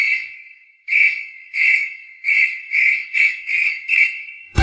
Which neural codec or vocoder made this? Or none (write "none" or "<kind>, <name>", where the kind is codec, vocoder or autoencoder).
codec, SNAC